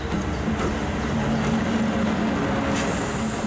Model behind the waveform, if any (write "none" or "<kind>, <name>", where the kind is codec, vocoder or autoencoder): none